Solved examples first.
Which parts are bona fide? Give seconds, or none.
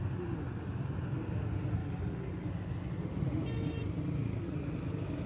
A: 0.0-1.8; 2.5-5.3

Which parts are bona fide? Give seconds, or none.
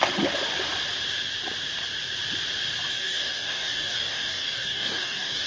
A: 0.0-2.9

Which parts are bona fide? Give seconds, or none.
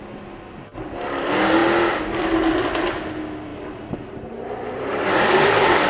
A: 0.0-5.9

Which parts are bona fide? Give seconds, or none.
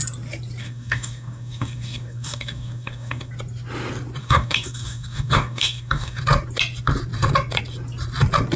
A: 0.0-0.6; 3.3-4.2; 6.2-8.6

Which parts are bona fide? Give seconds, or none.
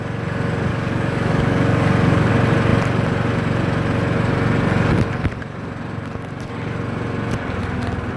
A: 0.0-0.7; 2.3-8.2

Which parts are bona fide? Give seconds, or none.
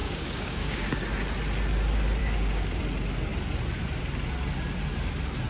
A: 0.9-2.2; 2.8-5.5